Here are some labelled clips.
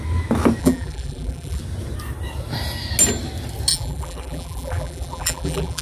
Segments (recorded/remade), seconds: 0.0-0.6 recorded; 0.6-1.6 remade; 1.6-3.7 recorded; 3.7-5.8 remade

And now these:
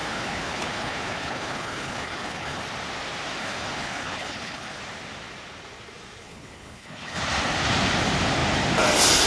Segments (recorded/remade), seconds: 0.0-2.6 remade; 2.6-3.4 recorded; 3.4-4.8 remade; 4.8-6.2 recorded; 6.2-7.2 remade; 7.2-9.3 recorded

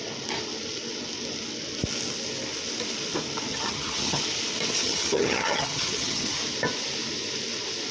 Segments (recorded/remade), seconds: 0.0-3.5 recorded; 3.5-4.2 remade; 4.2-4.8 recorded; 4.8-6.4 remade; 6.4-7.9 recorded

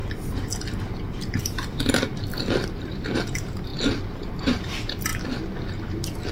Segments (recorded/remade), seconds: 0.0-1.4 recorded; 1.4-2.1 remade; 2.1-2.6 recorded; 2.6-3.7 remade; 3.7-4.4 recorded; 4.4-5.1 remade; 5.1-6.3 recorded

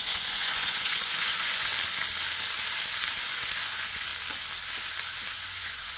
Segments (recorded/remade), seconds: 0.0-1.7 remade; 1.7-3.2 recorded; 3.2-4.1 remade; 4.1-5.3 recorded; 5.3-6.0 remade